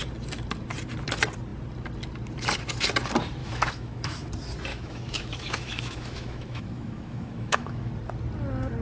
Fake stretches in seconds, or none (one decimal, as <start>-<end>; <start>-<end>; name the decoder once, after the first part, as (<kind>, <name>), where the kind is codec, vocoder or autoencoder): 3.4-4.3 (autoencoder, DAC-VAE); 4.7-7.9